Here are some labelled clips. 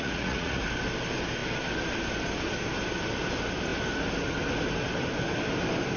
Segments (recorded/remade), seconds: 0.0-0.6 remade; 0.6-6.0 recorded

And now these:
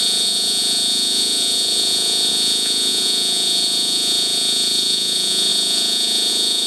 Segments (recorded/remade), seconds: 0.0-6.7 remade